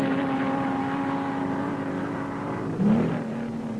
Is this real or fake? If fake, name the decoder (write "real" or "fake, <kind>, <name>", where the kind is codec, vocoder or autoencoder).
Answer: real